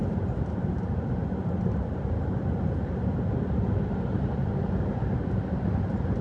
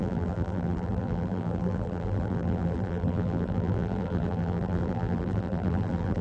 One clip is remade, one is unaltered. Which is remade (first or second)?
second